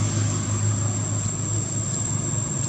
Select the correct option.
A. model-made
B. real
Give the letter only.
B